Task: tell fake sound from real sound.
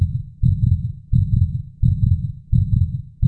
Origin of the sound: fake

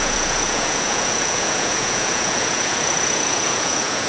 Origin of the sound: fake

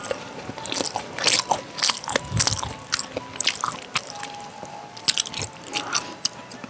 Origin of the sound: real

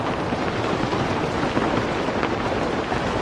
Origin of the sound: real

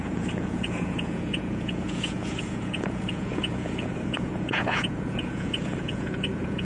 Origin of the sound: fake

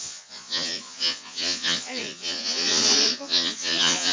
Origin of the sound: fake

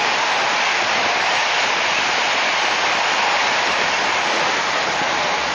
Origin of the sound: real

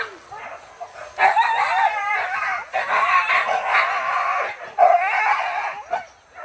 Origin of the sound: real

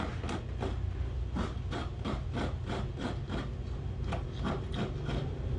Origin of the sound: real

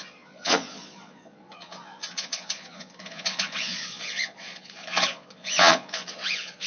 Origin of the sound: fake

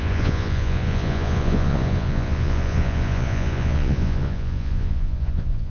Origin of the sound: fake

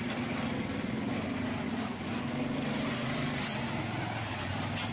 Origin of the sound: real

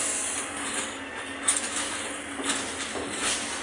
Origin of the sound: real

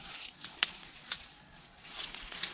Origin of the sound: fake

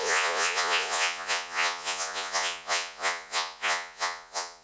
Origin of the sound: fake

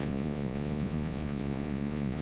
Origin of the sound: fake